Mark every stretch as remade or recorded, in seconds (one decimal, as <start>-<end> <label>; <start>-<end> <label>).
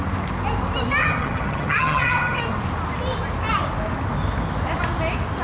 0.0-1.0 recorded; 1.0-2.4 remade; 2.4-5.4 recorded